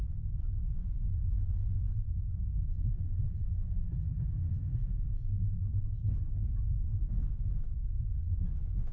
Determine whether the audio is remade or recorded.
recorded